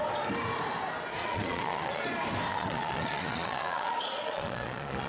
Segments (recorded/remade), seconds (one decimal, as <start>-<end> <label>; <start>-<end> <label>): 0.0-1.2 recorded; 1.2-2.0 remade; 2.0-2.5 recorded; 2.5-5.1 remade